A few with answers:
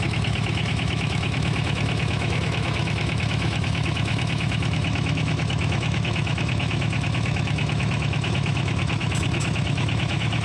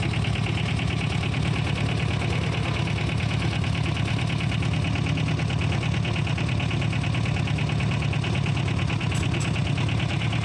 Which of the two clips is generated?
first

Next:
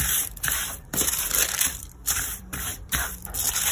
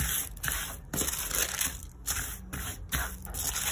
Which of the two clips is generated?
first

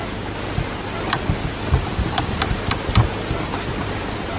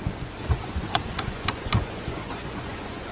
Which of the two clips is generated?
second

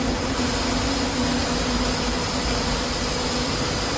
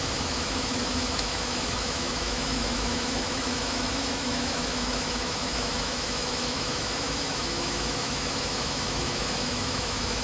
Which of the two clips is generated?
second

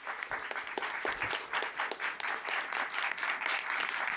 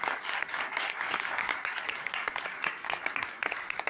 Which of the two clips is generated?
second